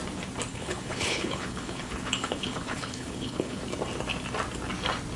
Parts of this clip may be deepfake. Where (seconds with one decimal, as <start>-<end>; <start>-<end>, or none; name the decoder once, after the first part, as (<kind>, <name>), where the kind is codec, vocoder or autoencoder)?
0.5-3.6 (codec, HILCodec)